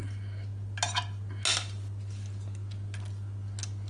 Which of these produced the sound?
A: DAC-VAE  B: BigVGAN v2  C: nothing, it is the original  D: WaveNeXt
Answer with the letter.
C